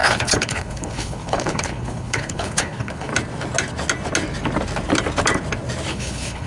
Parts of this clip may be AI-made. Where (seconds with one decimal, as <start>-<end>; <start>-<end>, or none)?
0.0-3.1; 5.9-6.5